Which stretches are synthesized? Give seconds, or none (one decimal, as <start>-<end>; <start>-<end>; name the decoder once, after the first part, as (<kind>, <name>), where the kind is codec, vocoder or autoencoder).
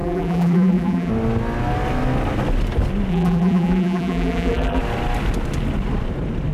0.0-1.1 (vocoder, BigVGAN v2); 3.1-4.8